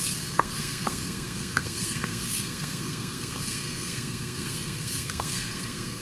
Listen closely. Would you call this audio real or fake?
fake